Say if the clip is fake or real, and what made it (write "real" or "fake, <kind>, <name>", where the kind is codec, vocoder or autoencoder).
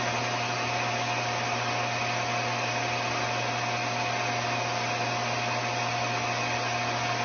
real